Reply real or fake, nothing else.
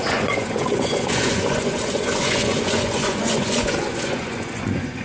fake